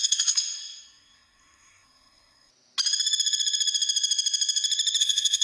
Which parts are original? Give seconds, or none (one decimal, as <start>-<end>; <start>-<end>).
2.5-5.0